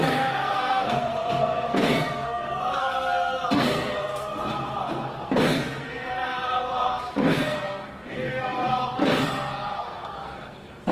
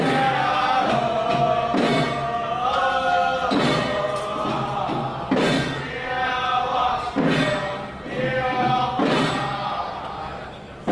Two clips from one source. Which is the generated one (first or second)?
first